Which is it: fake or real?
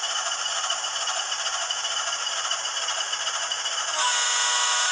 real